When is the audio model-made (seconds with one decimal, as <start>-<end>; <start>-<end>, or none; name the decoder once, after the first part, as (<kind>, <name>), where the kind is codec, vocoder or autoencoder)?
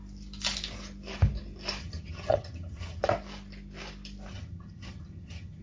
1.8-3.0 (vocoder, HiFi-GAN); 4.3-5.6